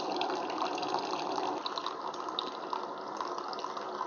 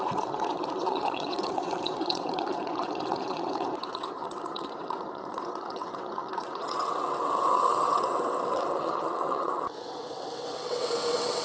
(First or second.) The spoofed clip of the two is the second